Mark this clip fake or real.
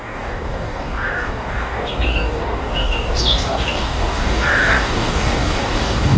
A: fake